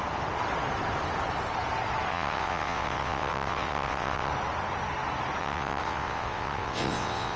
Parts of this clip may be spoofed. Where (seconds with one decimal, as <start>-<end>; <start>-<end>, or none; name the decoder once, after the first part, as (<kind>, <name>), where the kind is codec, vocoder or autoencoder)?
2.1-4.3 (vocoder, WaveNeXt); 5.4-7.4

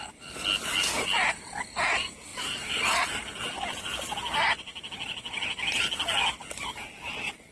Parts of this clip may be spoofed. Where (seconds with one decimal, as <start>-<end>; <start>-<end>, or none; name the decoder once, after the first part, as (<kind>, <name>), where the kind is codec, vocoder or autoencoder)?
2.3-3.2 (vocoder, BigVGAN v2)

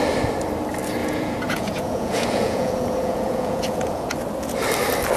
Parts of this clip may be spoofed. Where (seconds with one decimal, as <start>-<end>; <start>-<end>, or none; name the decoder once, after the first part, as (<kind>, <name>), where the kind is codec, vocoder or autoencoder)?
1.0-4.1 (vocoder, Vocos)